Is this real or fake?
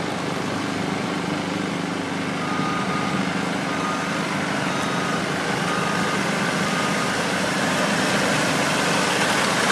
real